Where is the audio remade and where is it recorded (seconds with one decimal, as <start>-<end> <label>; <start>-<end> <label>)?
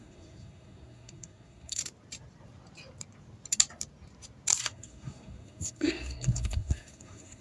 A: 0.0-1.8 remade; 1.8-4.6 recorded; 4.6-7.4 remade